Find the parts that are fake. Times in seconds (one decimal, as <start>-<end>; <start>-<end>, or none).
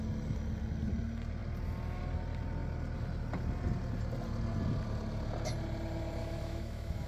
6.2-7.1